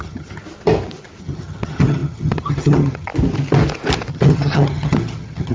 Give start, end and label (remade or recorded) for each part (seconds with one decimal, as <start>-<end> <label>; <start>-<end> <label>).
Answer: 0.0-0.4 remade; 0.4-1.2 recorded; 1.2-3.1 remade; 3.1-4.1 recorded; 4.1-5.5 remade